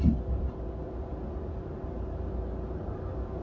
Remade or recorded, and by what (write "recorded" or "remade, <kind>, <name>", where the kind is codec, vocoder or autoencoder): recorded